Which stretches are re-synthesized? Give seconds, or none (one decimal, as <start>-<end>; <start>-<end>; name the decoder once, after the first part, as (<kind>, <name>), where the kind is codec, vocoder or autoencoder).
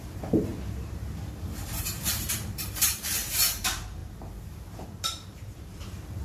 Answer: 0.0-0.5 (vocoder, BigVGAN v2); 1.8-6.2